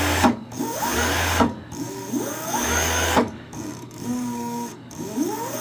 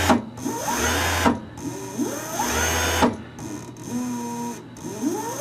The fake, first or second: first